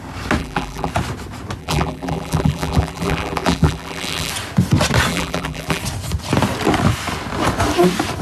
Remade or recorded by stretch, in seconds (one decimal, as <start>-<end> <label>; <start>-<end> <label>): 0.0-0.4 recorded; 0.4-0.9 remade; 0.9-1.6 recorded; 1.6-4.3 remade; 4.3-5.1 recorded; 5.1-5.8 remade; 5.8-8.2 recorded